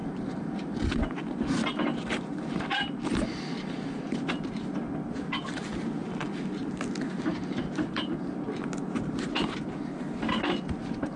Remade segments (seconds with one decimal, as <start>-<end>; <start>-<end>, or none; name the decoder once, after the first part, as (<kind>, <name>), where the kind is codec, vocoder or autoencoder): 0.0-4.3 (vocoder, BigVGAN v2); 6.0-6.7; 7.3-8.2